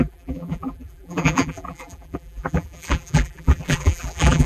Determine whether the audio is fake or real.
fake